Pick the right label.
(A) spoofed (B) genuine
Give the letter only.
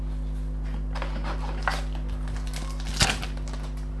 B